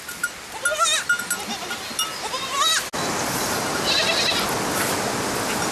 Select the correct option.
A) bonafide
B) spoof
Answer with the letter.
A